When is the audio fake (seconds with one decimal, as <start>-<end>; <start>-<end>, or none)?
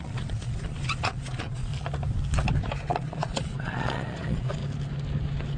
0.0-1.7; 2.9-4.6